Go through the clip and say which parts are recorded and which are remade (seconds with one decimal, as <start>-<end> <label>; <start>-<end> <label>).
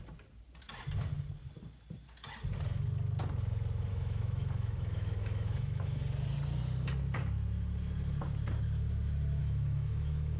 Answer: 0.0-3.9 recorded; 3.9-6.0 remade; 6.0-9.4 recorded; 9.4-10.4 remade